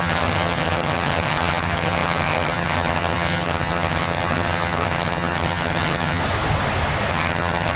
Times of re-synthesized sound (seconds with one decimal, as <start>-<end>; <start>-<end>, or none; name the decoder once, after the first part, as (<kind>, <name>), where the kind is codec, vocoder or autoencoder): 0.0-6.2 (vocoder, HiFi-GAN); 7.1-7.8